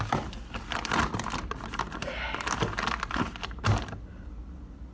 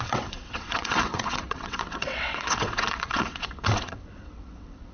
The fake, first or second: second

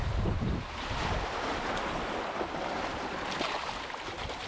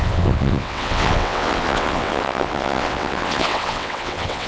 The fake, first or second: second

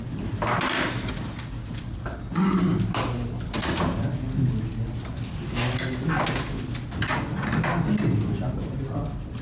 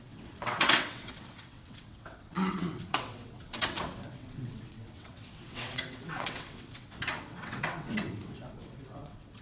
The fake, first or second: second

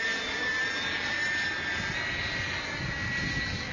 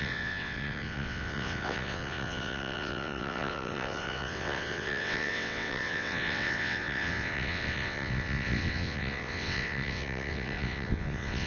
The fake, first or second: second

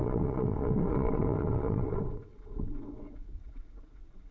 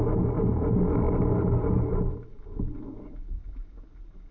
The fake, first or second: first